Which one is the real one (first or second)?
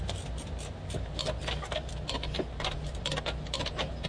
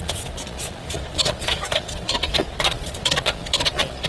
first